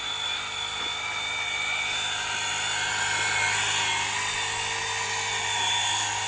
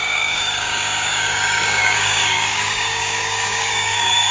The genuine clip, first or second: first